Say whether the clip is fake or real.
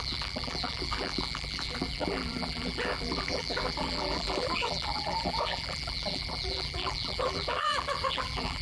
fake